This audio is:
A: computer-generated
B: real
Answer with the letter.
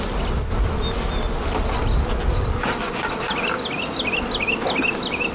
B